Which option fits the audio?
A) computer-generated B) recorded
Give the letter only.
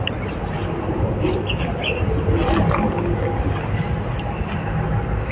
B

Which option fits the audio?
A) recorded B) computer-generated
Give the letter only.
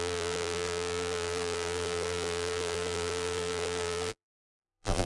B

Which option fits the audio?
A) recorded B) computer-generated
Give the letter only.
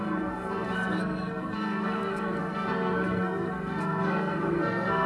B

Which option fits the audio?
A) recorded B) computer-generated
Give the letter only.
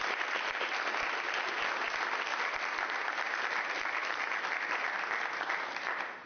A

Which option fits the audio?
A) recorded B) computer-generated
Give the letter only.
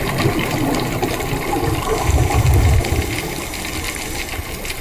A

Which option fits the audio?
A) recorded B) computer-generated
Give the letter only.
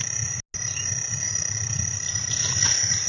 A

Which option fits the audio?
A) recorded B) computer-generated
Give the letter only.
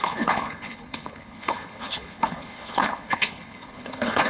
B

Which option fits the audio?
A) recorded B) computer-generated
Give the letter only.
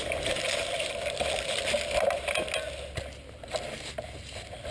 A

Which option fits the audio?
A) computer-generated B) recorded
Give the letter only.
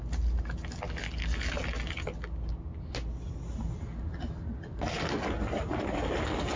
B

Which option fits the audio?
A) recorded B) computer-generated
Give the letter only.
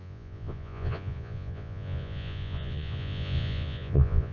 B